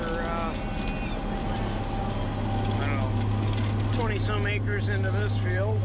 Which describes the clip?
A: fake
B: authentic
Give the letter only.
B